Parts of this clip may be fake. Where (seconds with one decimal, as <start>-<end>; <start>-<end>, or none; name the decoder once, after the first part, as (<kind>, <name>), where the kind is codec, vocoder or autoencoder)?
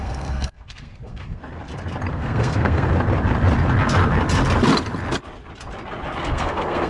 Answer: 0.0-1.4 (codec, SNAC); 2.1-2.9; 6.2-6.9